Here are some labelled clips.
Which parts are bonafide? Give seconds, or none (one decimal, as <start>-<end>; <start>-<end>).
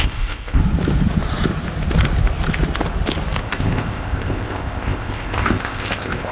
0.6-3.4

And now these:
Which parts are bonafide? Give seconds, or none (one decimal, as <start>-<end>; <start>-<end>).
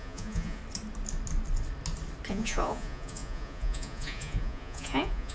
0.6-2.3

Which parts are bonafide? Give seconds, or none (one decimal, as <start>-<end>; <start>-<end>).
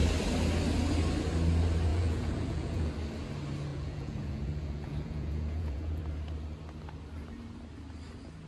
0.0-1.9; 2.9-3.7; 6.0-8.5